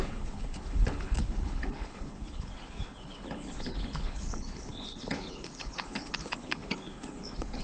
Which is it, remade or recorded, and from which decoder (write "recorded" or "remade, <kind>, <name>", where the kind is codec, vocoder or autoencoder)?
remade, codec, HILCodec